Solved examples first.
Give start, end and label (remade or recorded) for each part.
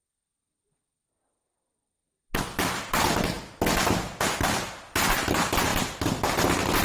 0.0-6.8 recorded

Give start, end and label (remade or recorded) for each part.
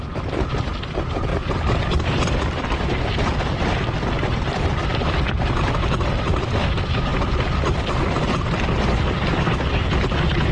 0.0-1.3 remade; 1.3-2.0 recorded; 2.0-10.5 remade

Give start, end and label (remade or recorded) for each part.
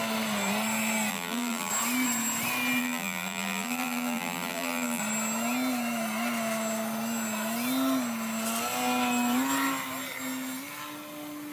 0.0-1.1 recorded; 1.1-1.7 remade; 1.7-2.8 recorded; 2.8-5.0 remade; 5.0-11.5 recorded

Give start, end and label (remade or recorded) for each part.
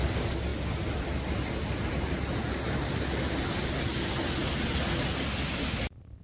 0.0-6.2 recorded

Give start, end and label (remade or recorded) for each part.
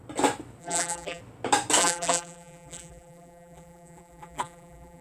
0.0-0.6 recorded; 0.6-1.2 remade; 1.2-1.8 recorded; 1.8-5.0 remade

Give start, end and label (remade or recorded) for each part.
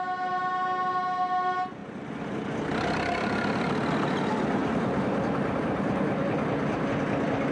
0.0-1.8 recorded; 1.8-2.3 remade; 2.3-7.5 recorded